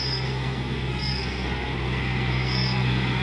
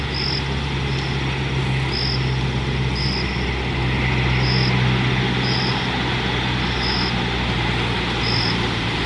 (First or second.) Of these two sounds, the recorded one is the second